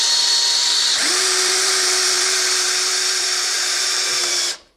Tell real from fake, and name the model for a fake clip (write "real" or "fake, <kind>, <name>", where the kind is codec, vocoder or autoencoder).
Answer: fake, vocoder, BigVGAN v2